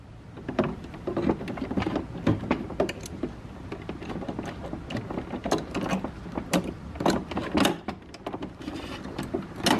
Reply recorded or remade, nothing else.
recorded